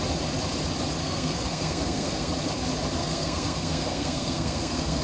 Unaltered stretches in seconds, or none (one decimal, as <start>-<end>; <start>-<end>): 0.0-1.0; 2.3-3.0